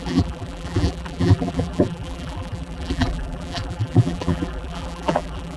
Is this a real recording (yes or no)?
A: no